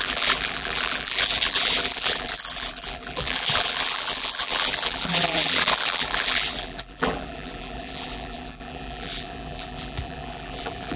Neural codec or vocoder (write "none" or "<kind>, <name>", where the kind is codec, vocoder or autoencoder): vocoder, BigVGAN v2